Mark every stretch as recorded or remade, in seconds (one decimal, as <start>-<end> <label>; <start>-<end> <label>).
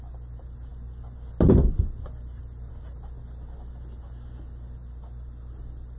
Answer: 0.0-6.0 recorded